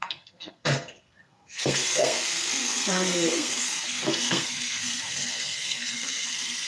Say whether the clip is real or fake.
fake